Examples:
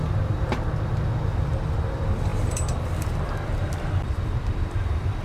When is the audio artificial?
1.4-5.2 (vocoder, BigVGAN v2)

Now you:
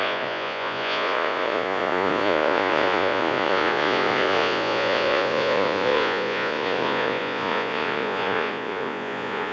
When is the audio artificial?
0.0-9.5 (vocoder, Vocos)

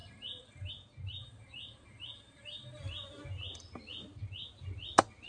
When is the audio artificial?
0.0-0.7 (vocoder, BigVGAN v2); 1.2-2.8

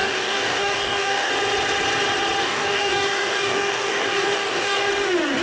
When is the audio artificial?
0.0-1.3 (codec, DAC); 2.4-4.9

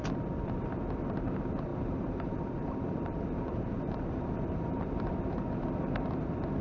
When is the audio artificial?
1.7-5.7 (vocoder, BigVGAN v2)

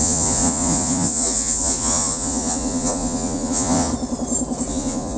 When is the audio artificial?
0.0-3.9 (vocoder, Vocos); 4.7-5.2

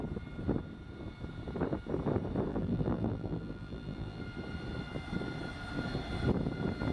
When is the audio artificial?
2.5-4.2 (vocoder, BigVGAN v2)

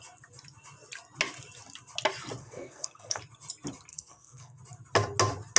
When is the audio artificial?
2.4-3.2 (codec, SNAC); 3.9-4.6